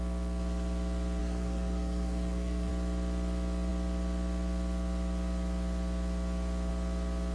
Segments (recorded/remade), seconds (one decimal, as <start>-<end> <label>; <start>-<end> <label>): 0.0-1.2 recorded; 1.2-2.7 remade; 2.7-7.3 recorded